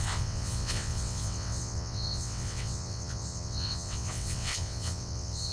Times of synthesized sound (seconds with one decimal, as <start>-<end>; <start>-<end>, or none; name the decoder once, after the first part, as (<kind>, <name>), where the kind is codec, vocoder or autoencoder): 0.0-5.5 (vocoder, WaveNeXt)